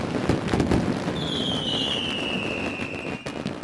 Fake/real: real